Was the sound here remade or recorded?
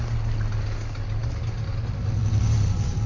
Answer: recorded